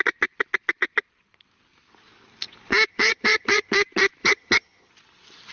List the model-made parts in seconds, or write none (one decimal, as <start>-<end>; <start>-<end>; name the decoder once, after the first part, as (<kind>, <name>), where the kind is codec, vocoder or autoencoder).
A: 2.9-3.7 (vocoder, HiFi-GAN); 4.2-4.9